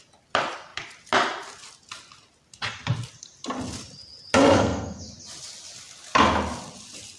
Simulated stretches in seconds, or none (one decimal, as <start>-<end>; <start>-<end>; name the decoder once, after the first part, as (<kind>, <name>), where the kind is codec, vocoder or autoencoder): 4.4-5.0 (codec, SNAC)